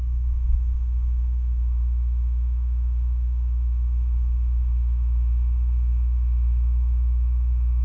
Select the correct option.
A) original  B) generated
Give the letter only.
B